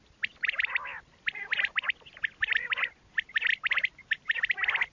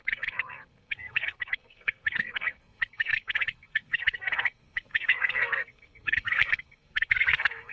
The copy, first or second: second